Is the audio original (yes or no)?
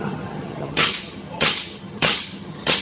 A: no